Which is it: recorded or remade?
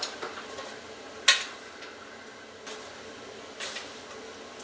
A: recorded